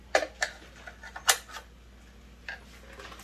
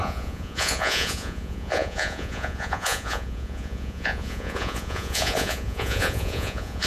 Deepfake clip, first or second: second